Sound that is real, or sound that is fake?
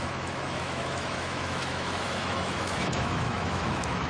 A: fake